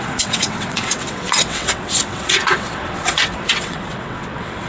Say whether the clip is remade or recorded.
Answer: remade